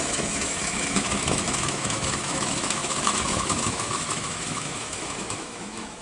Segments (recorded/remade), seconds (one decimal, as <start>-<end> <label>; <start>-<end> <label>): 0.0-6.0 remade